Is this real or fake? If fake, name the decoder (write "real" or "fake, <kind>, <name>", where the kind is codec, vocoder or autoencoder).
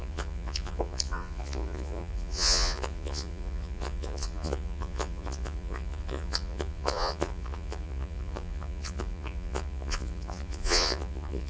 fake, vocoder, Vocos